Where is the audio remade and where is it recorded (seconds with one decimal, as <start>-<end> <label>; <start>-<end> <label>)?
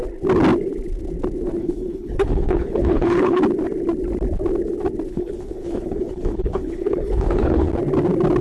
0.0-1.6 recorded; 1.6-3.4 remade; 3.4-5.1 recorded; 5.1-7.7 remade; 7.7-8.4 recorded